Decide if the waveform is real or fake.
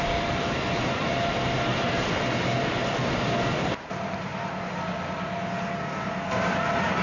real